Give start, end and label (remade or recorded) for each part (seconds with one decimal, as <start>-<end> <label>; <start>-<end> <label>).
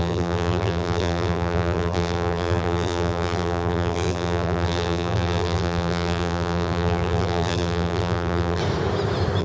0.0-8.6 remade; 8.6-9.4 recorded